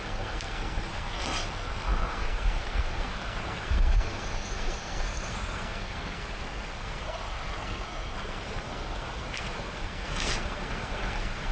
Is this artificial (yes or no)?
yes